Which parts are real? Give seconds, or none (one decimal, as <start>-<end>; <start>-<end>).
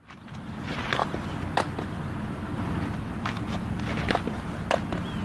0.0-5.2